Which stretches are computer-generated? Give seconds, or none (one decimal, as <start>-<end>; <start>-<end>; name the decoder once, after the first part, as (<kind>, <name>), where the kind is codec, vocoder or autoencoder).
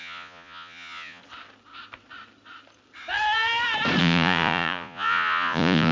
0.0-1.2 (vocoder, Vocos); 4.0-5.9